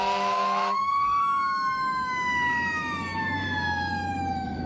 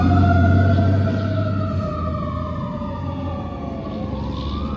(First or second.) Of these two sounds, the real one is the second